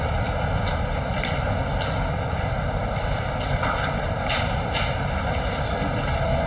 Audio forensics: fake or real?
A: real